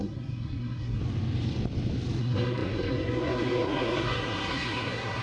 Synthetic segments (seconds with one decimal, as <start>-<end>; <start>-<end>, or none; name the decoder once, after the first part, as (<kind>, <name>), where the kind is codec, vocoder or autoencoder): 0.0-1.0 (codec, SNAC); 2.2-5.2